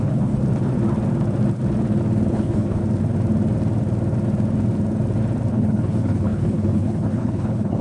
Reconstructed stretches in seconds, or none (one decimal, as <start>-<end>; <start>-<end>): 0.0-0.4; 2.3-2.8; 5.5-7.8